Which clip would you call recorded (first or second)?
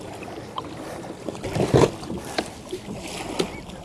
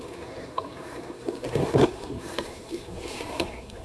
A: first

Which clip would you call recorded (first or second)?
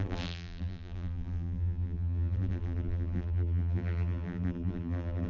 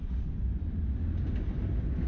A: second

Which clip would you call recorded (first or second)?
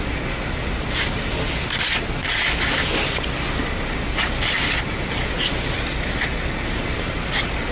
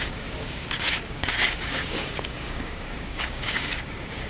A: first